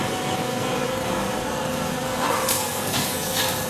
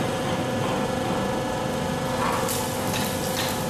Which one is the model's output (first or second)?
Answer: first